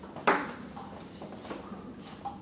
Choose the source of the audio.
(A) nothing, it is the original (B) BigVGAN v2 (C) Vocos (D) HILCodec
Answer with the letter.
A